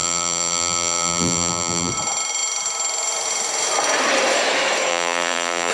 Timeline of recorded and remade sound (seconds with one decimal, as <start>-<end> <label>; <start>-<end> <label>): 0.0-1.9 remade; 1.9-4.9 recorded; 4.9-5.7 remade